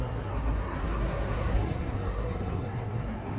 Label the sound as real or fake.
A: fake